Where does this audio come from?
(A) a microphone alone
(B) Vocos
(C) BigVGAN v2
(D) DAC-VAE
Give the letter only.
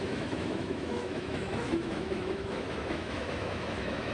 D